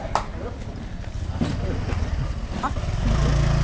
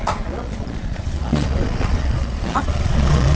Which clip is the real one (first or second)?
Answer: first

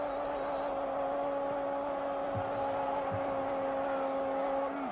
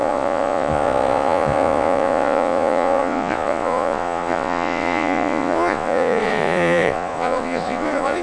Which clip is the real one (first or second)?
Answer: first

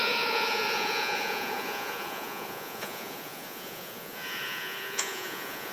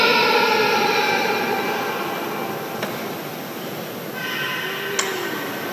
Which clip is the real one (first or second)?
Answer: second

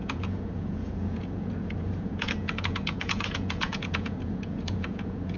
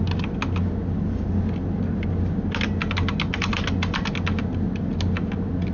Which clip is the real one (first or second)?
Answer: second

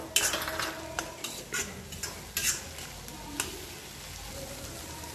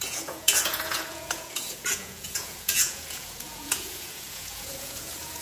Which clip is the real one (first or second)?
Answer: first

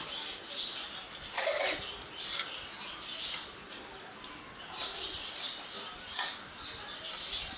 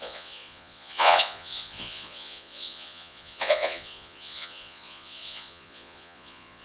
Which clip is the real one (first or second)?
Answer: first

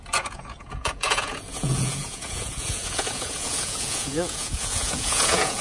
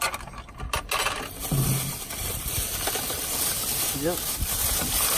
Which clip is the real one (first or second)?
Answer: second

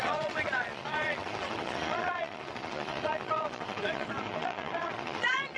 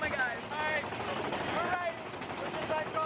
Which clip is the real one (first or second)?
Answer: second